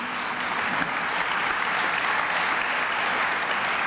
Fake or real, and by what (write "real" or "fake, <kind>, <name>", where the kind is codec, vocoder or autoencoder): real